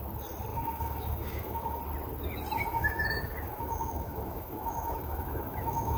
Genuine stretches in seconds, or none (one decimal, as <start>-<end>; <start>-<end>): 0.0-0.5; 1.8-2.7